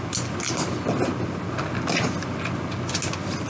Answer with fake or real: real